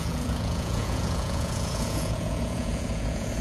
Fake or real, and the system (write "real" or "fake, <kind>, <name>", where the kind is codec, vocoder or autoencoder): fake, vocoder, Vocos